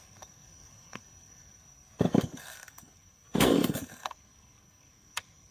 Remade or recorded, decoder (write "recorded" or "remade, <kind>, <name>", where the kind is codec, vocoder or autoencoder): remade, codec, SNAC